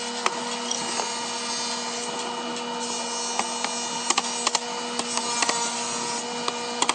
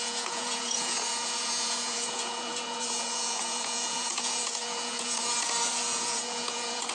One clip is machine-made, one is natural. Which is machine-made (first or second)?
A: second